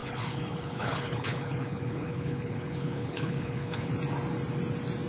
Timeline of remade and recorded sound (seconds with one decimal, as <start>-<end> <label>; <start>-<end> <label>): 0.0-3.9 remade; 3.9-5.1 recorded